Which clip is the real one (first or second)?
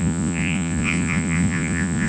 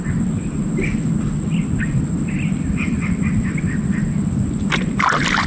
second